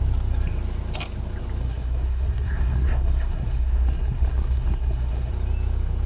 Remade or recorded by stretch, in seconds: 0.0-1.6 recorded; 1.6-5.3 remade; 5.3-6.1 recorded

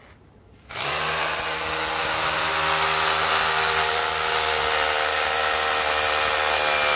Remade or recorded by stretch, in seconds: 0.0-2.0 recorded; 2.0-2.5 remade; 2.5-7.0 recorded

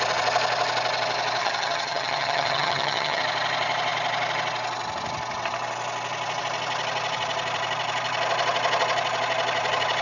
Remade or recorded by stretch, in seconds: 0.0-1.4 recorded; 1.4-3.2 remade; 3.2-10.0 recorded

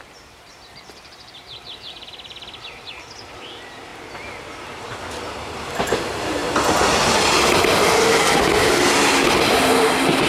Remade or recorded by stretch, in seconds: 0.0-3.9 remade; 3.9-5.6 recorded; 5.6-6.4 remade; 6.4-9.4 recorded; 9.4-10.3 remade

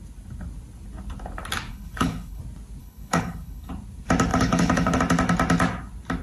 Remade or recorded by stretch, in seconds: 0.0-1.7 recorded; 1.7-2.4 remade; 2.4-2.8 recorded; 2.8-3.7 remade; 3.7-4.3 recorded; 4.3-5.0 remade; 5.0-6.2 recorded

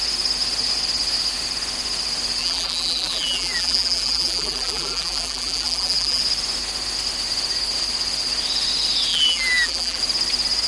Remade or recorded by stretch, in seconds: 0.0-2.4 recorded; 2.4-6.2 remade; 6.2-9.1 recorded; 9.1-10.0 remade; 10.0-10.7 recorded

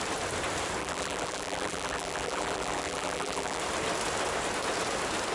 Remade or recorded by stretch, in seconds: 0.0-0.8 recorded; 0.8-3.6 remade; 3.6-5.3 recorded